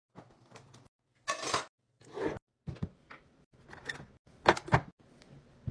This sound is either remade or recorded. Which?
recorded